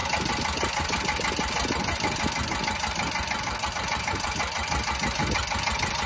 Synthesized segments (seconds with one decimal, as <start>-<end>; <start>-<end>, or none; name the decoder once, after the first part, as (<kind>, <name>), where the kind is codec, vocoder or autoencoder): none